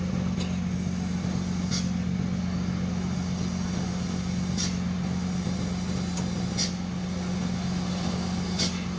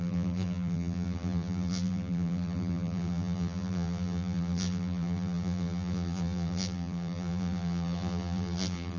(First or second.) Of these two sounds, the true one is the first